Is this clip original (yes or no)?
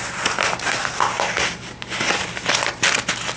yes